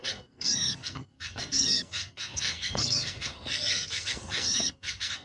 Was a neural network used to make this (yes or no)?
yes